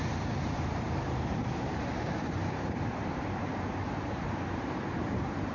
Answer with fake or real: fake